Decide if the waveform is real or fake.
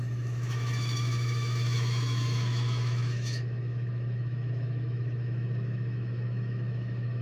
fake